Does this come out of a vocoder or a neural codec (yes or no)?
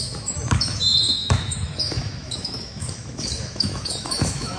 yes